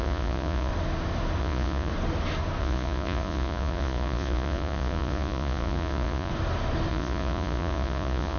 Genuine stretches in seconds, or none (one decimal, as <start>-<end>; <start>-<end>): 0.7-1.4; 1.9-2.6; 6.3-6.9